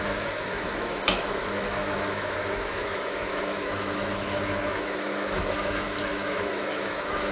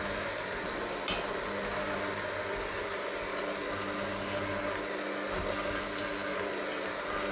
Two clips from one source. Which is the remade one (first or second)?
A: first